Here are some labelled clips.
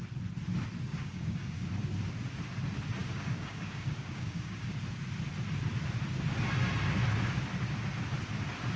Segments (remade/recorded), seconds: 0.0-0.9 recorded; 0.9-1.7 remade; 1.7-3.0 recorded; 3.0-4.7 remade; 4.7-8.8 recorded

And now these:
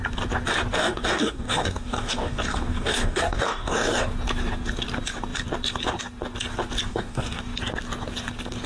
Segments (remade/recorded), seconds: 0.0-0.8 recorded; 0.8-4.0 remade; 4.0-6.9 recorded; 6.9-7.4 remade; 7.4-8.7 recorded

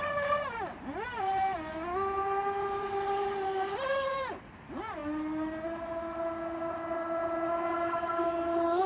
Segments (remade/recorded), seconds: 0.0-8.9 recorded

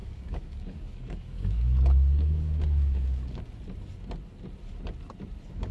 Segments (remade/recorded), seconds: 0.0-3.4 remade; 3.4-5.7 recorded

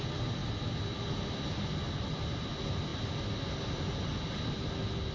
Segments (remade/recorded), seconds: 0.0-5.1 recorded

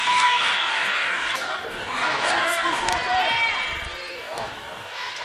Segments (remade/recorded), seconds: 0.0-2.9 remade; 2.9-4.1 recorded; 4.1-5.2 remade

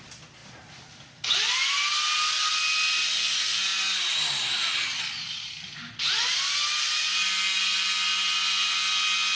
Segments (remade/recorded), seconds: 0.0-9.3 recorded

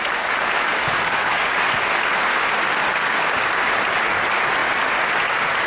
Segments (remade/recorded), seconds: 0.0-0.8 recorded; 0.8-1.6 remade; 1.6-3.0 recorded; 3.0-3.7 remade; 3.7-5.7 recorded